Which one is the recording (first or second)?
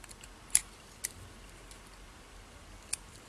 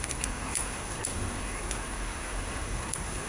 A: first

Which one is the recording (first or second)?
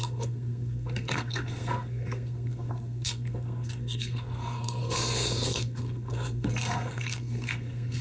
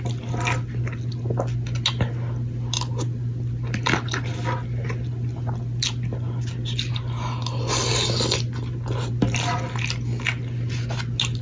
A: second